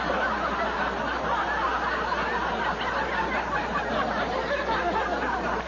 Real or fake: real